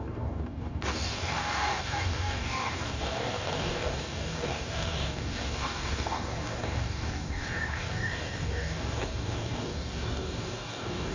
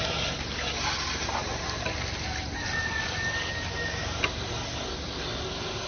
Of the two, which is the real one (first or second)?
second